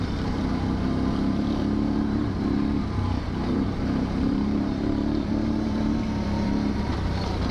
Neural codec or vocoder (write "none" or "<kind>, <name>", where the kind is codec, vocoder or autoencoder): vocoder, BigVGAN v2